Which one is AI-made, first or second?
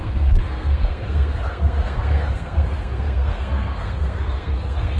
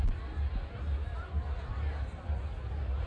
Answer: first